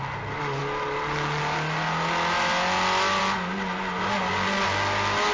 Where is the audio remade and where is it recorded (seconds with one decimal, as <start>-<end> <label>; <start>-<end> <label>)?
0.0-5.3 recorded